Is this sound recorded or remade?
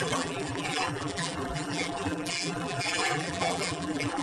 remade